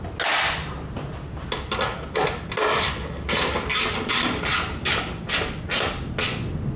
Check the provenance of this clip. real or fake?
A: real